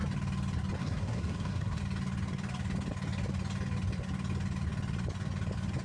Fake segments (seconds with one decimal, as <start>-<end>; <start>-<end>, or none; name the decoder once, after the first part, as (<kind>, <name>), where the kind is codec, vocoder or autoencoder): 0.8-1.8 (codec, SNAC)